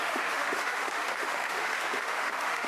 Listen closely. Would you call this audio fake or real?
fake